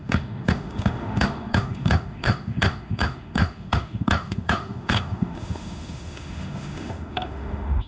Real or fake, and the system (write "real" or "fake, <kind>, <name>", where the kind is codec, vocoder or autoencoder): fake, autoencoder, DAC-VAE